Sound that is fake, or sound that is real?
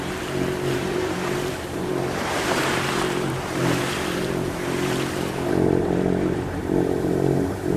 fake